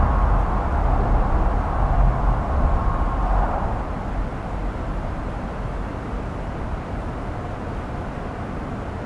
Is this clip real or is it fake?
real